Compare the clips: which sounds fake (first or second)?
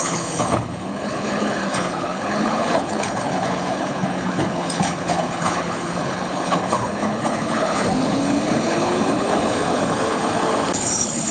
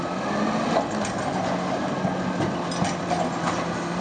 first